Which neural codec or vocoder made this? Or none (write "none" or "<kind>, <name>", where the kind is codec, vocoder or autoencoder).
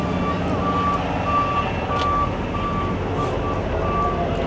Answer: none